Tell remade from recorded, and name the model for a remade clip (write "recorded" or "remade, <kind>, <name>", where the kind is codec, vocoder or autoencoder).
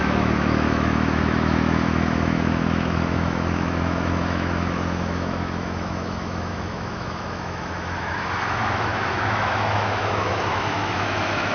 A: remade, autoencoder, DAC-VAE